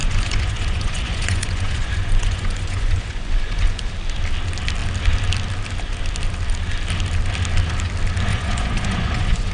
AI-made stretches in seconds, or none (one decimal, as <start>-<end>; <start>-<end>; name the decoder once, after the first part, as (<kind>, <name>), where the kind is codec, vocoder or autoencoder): 0.0-3.9 (vocoder, Vocos); 8.3-9.5